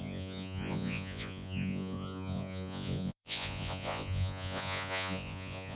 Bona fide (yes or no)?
no